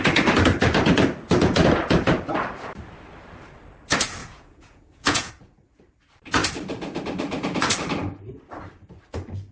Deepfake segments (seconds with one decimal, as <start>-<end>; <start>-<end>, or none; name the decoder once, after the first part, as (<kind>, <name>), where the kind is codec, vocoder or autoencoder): 4.2-5.3 (vocoder, Vocos)